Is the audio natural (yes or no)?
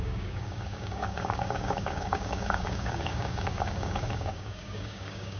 no